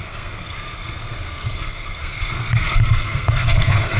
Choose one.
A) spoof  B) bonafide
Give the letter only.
A